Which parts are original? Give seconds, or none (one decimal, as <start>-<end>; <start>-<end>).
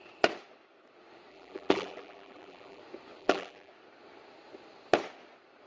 0.0-1.3; 2.8-3.2; 3.7-5.7